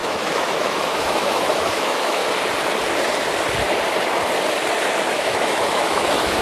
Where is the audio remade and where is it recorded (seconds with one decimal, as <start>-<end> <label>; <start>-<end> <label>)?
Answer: 0.0-2.2 remade; 2.2-5.1 recorded; 5.1-6.4 remade